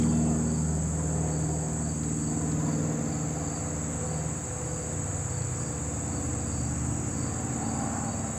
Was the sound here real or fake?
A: real